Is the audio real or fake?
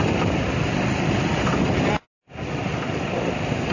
real